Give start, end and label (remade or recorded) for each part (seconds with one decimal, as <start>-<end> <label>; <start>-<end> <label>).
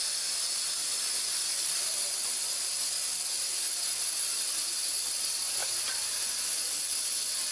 0.0-5.6 recorded; 5.6-6.2 remade; 6.2-7.5 recorded